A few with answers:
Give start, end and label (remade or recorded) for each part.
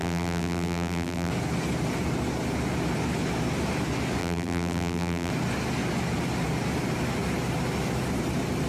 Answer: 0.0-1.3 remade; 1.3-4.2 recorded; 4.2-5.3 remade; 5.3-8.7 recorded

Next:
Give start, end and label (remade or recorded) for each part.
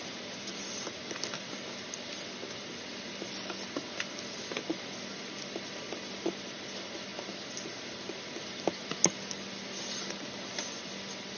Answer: 0.0-11.4 recorded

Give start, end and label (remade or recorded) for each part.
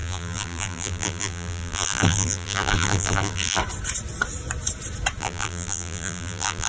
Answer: 0.0-3.6 remade; 3.6-5.2 recorded; 5.2-6.7 remade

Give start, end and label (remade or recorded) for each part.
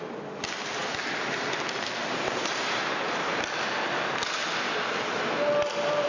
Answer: 0.0-6.1 recorded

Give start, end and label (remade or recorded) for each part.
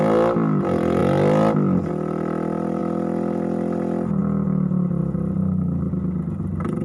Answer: 0.0-6.8 recorded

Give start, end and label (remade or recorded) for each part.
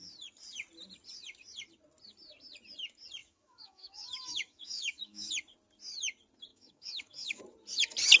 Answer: 0.0-3.2 recorded; 3.2-5.3 remade; 5.3-6.5 recorded; 6.5-7.4 remade; 7.4-8.2 recorded